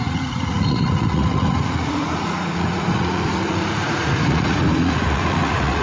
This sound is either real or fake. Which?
fake